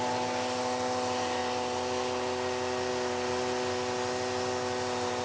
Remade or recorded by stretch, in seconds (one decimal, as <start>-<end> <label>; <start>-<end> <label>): 0.0-5.2 recorded

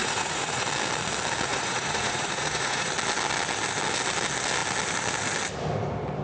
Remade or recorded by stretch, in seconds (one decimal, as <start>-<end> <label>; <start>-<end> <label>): 0.0-0.6 remade; 0.6-1.5 recorded; 1.5-2.9 remade; 2.9-6.2 recorded